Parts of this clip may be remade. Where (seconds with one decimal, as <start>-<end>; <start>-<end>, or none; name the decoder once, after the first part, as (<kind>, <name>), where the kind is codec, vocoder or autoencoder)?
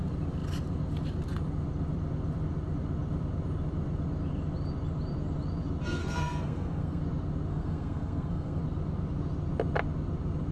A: 6.0-7.0 (codec, SNAC); 7.5-8.6